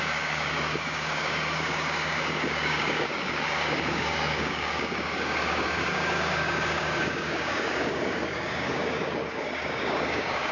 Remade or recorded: remade